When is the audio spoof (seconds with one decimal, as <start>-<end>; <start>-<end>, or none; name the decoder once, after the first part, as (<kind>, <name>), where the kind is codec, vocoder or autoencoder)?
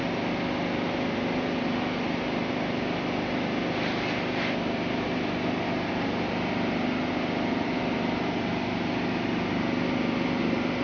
none